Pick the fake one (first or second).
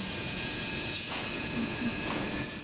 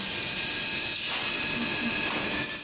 first